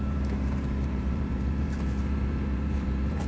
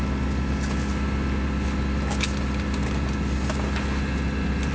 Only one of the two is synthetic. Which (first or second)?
first